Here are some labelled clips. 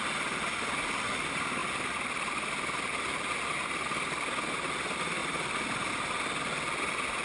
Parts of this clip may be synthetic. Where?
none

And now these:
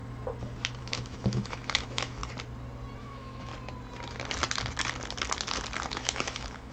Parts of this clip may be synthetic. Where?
0.8-2.2; 3.0-3.5; 5.9-6.7

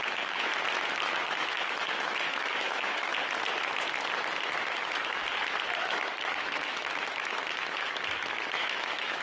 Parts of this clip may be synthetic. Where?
0.0-0.5; 1.1-3.1; 4.3-5.2; 5.8-9.2

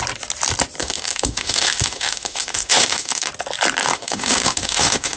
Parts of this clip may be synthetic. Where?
0.8-3.3; 3.8-5.2

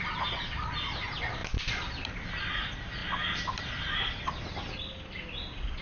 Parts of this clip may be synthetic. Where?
none

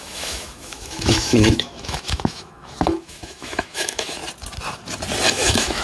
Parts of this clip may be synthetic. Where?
0.0-4.2; 5.3-5.8

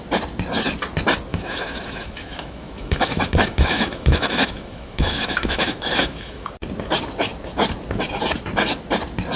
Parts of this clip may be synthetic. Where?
1.3-6.5